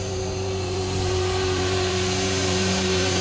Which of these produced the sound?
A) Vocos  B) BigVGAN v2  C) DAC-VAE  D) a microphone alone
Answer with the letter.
B